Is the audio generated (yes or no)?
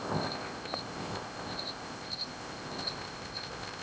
yes